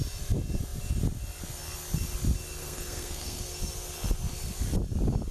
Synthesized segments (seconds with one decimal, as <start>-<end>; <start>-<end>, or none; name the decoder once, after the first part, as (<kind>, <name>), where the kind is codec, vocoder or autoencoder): 2.6-3.4 (codec, SNAC)